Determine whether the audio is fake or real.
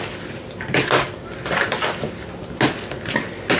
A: real